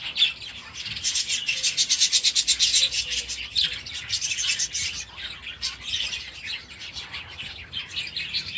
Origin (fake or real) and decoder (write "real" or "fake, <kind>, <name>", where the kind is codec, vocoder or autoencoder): real